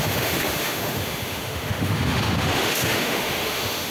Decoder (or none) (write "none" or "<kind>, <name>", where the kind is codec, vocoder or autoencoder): autoencoder, DAC-VAE